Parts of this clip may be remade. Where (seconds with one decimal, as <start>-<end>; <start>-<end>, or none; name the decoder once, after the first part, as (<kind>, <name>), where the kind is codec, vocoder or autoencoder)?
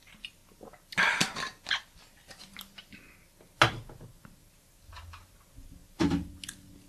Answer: 0.0-0.4 (vocoder, BigVGAN v2); 4.5-5.8